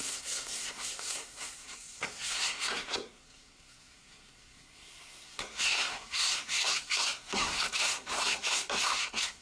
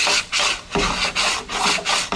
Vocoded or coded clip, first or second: first